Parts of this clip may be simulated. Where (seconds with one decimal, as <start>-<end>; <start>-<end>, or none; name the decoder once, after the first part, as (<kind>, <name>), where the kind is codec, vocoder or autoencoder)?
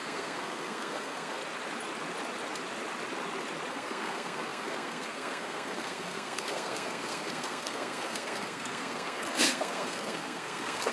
0.0-1.4 (codec, SNAC); 3.7-10.9